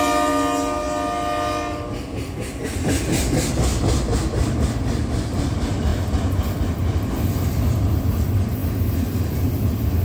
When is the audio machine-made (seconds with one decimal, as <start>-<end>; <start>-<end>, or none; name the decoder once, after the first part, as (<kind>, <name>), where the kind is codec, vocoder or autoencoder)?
none